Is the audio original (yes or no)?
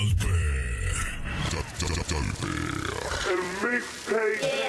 no